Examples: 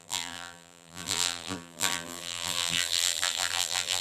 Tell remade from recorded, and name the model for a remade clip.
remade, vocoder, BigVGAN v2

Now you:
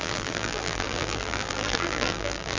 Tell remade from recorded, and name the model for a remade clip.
remade, vocoder, BigVGAN v2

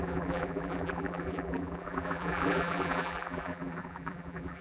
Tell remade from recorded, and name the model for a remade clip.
remade, vocoder, BigVGAN v2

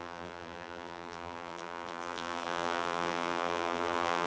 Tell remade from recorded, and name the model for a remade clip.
remade, vocoder, BigVGAN v2